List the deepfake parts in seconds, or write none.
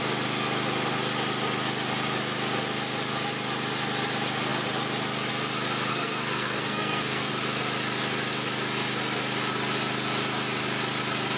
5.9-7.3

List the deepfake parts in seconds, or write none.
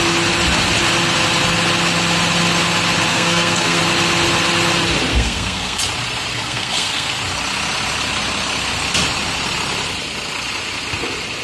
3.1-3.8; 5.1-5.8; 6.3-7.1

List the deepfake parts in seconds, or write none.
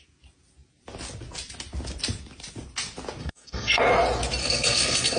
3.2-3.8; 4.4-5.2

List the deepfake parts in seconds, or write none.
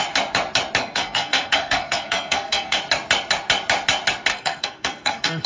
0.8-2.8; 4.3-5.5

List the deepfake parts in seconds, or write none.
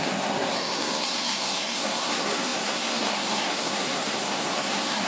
0.0-5.1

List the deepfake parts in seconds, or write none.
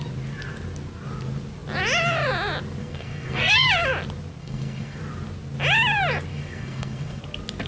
2.8-3.7; 4.4-5.0; 6.3-7.2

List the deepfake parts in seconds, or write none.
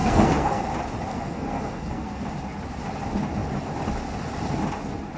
0.0-0.6; 1.1-2.2